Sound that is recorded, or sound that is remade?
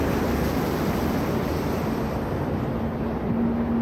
recorded